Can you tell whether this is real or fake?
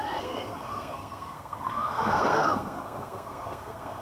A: fake